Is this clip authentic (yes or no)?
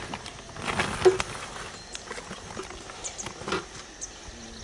yes